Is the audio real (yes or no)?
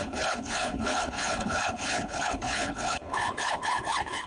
no